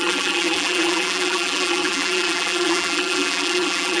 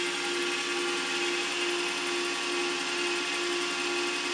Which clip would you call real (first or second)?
second